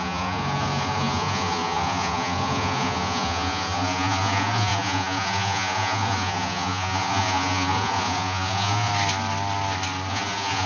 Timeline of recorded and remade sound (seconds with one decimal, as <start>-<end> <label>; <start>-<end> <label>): 0.0-8.9 remade; 8.9-10.1 recorded; 10.1-10.7 remade